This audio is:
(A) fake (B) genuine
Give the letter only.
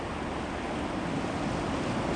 B